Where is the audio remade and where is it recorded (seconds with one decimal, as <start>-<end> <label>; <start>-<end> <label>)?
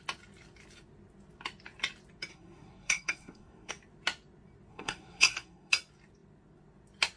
0.0-2.3 recorded; 2.3-3.7 remade; 3.7-4.7 recorded; 4.7-5.7 remade; 5.7-7.2 recorded